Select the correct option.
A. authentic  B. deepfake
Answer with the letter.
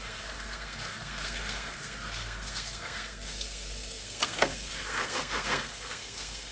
B